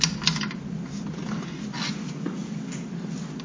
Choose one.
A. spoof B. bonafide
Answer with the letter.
B